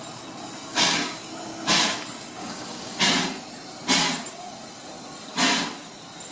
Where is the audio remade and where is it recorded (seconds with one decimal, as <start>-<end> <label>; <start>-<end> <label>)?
0.0-0.7 recorded; 0.7-1.3 remade; 1.3-2.4 recorded; 2.4-3.0 remade; 3.0-6.3 recorded